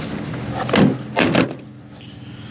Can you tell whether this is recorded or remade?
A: recorded